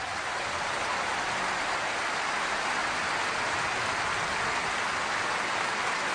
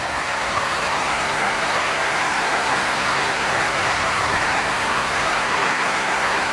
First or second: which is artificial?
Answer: second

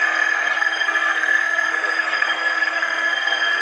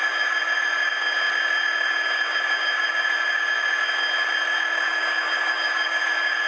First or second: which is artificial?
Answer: first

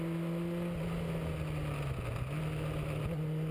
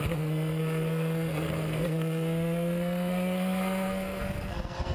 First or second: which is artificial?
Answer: second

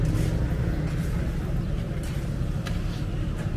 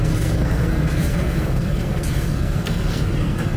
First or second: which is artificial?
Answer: second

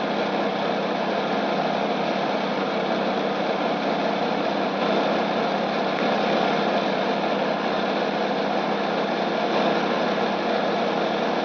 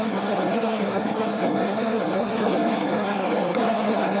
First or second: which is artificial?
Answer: second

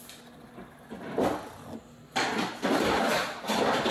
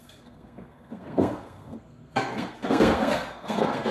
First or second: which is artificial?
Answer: second